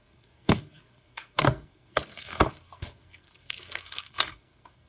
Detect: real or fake fake